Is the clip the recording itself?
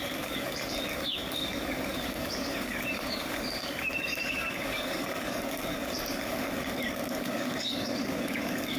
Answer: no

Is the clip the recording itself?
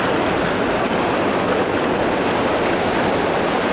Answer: yes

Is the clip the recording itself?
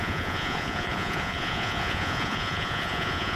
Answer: no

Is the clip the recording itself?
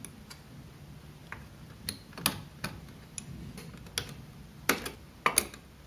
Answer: yes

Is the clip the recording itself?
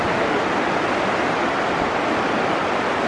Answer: yes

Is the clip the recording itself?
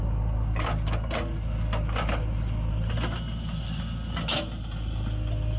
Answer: yes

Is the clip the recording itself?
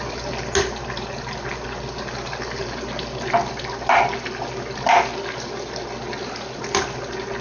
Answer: yes